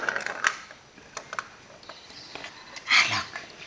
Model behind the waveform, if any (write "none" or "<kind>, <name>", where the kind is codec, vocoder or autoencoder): none